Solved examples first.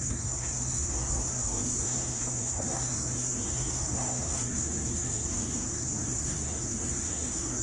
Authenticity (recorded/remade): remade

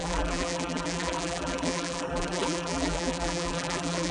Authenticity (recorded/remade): remade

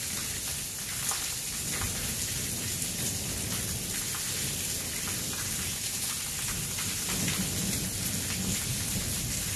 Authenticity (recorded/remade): recorded